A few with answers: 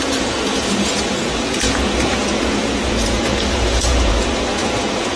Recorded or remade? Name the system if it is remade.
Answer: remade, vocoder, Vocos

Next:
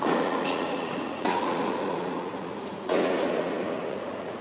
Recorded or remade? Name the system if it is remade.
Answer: remade, vocoder, Vocos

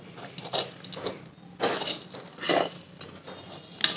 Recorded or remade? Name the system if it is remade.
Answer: recorded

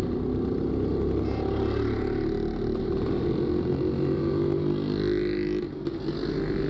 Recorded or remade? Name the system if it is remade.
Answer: recorded